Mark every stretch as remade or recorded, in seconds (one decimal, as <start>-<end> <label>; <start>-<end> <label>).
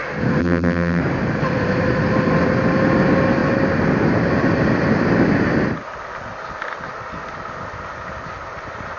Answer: 0.0-0.4 recorded; 0.4-1.0 remade; 1.0-9.0 recorded